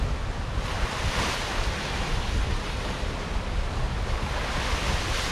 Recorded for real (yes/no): yes